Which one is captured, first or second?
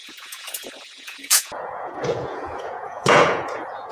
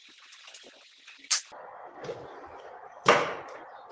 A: second